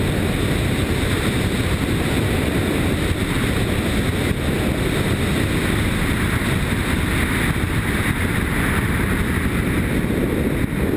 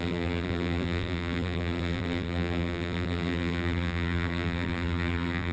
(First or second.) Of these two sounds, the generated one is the second